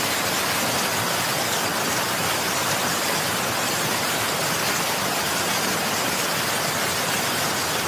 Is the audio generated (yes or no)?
no